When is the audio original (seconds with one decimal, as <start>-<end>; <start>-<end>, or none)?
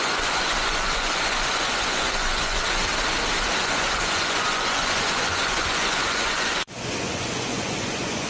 2.9-3.6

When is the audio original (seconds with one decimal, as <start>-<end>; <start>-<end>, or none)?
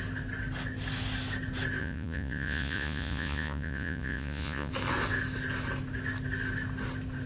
0.0-1.8; 4.7-7.3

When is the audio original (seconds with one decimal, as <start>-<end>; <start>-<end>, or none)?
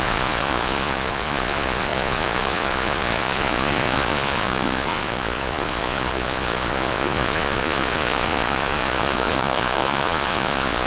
none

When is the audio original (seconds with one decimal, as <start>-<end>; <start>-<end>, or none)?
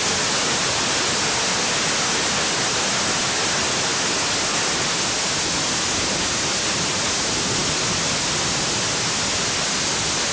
0.0-10.3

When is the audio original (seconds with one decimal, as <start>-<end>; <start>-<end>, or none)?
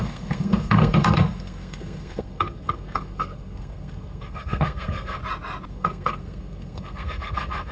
5.2-5.7